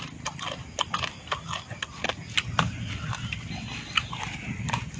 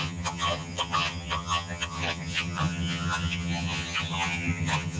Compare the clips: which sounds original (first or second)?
first